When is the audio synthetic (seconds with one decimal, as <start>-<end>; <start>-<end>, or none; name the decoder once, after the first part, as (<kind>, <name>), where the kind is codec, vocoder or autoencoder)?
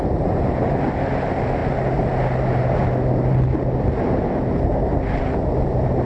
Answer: none